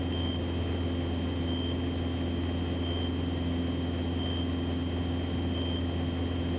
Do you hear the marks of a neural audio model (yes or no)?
no